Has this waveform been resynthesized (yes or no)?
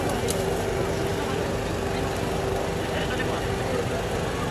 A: no